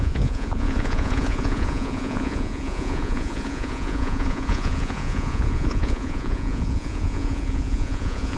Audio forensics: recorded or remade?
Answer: remade